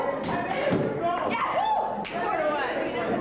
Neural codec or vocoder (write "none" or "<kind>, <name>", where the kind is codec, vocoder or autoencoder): none